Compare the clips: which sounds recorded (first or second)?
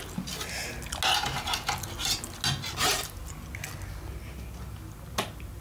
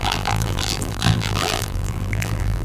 first